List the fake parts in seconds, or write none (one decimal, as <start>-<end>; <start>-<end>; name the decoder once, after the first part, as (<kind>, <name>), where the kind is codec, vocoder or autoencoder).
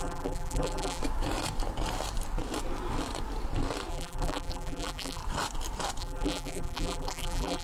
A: 0.0-1.0 (vocoder, BigVGAN v2); 3.9-5.2; 6.0-7.6